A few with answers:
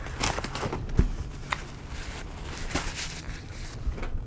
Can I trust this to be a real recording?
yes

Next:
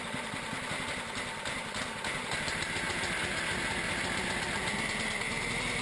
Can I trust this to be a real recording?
yes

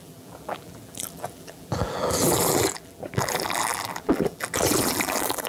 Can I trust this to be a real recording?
no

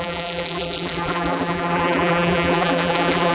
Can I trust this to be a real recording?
no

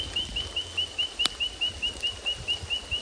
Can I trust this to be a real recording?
yes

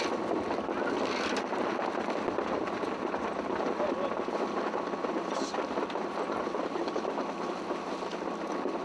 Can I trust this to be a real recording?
yes